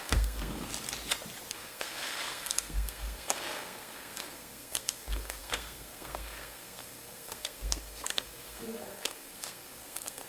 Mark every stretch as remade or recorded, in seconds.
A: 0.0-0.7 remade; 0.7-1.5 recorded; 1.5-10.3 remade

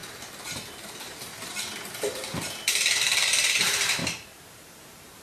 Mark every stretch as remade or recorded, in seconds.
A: 0.0-0.8 recorded; 0.8-4.0 remade; 4.0-4.5 recorded; 4.5-5.2 remade

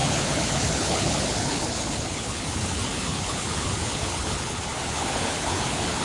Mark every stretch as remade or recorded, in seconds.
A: 0.0-6.0 remade

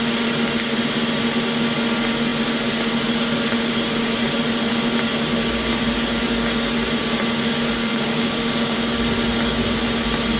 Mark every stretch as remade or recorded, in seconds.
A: 0.0-7.8 recorded; 7.8-9.0 remade; 9.0-10.4 recorded